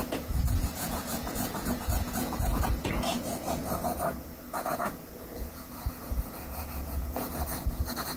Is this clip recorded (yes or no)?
no